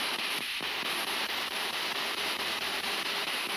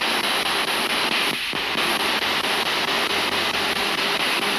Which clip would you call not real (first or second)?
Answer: first